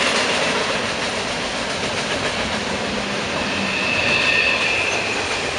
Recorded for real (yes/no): yes